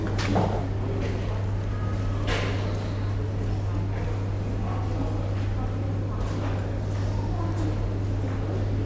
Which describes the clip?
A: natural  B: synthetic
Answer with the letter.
A